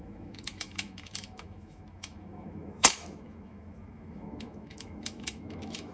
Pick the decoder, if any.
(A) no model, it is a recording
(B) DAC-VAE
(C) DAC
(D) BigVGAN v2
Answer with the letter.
B